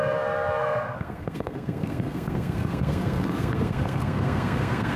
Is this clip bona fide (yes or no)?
no